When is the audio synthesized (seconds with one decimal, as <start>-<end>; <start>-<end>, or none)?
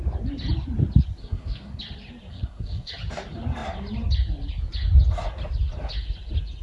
1.2-1.8; 2.3-2.9